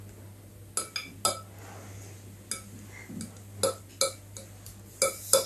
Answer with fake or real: real